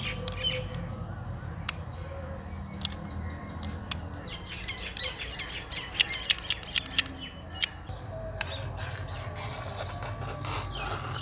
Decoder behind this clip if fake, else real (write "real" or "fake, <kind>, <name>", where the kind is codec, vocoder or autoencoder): real